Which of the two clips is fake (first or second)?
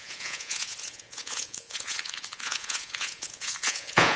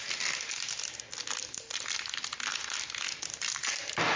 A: first